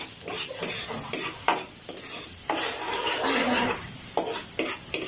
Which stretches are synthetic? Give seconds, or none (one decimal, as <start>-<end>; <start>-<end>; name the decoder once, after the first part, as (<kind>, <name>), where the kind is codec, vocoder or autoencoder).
0.0-1.5 (vocoder, BigVGAN v2); 2.2-5.1

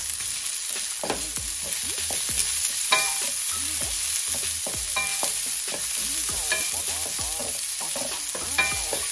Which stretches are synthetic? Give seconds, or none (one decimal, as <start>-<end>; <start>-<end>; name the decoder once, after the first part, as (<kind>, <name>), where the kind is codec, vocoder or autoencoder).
2.4-3.5 (vocoder, BigVGAN v2); 5.1-6.7; 7.4-8.2

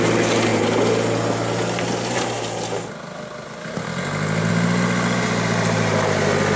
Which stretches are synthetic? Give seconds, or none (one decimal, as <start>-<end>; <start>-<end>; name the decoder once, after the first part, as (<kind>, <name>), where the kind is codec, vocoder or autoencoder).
none

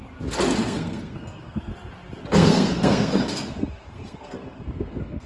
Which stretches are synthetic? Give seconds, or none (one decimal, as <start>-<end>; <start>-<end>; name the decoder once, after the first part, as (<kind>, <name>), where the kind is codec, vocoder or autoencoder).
0.6-1.7 (codec, SNAC); 2.3-5.3

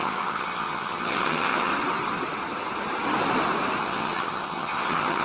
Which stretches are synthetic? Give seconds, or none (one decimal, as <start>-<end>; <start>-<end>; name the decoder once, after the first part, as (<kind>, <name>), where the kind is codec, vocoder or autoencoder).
0.0-1.7 (vocoder, HiFi-GAN); 3.8-5.2

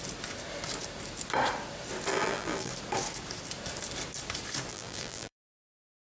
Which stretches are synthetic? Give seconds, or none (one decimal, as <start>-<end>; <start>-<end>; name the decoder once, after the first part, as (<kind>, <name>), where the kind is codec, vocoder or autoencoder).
2.1-2.7 (vocoder, BigVGAN v2); 4.7-5.4

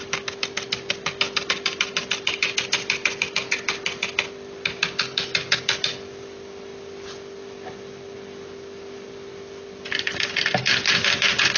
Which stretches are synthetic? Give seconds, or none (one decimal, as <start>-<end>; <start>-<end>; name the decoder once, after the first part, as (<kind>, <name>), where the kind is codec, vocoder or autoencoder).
none